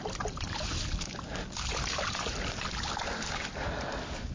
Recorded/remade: recorded